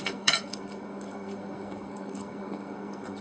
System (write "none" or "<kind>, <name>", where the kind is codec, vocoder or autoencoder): codec, SNAC